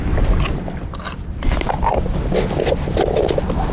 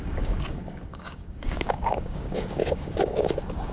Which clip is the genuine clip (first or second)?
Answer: first